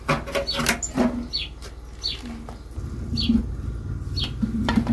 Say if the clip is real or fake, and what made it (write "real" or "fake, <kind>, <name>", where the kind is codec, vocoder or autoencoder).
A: real